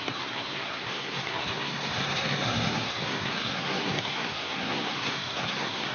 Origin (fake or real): fake